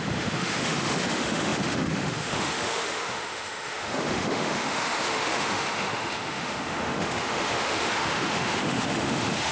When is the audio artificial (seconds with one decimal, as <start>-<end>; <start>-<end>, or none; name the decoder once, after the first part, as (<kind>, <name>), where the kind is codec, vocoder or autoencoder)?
0.0-9.5 (autoencoder, DAC-VAE)